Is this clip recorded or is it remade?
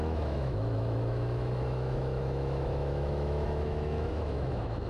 remade